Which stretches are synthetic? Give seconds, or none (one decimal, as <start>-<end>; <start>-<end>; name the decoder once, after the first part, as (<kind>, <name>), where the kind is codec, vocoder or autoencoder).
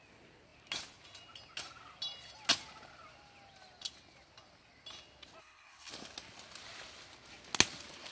5.4-5.9 (codec, HILCodec)